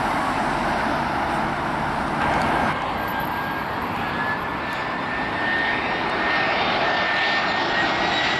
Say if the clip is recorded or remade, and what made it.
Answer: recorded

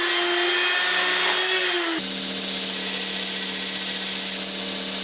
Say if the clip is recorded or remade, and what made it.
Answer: recorded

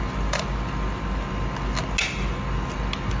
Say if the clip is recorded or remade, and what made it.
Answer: recorded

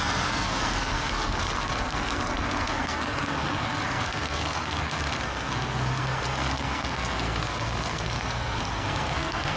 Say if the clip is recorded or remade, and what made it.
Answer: remade, codec, SNAC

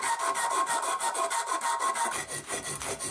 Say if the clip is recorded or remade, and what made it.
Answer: recorded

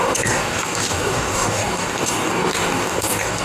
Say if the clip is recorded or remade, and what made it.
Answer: remade, codec, DAC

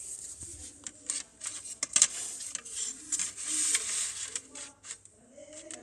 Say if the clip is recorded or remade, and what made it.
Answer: recorded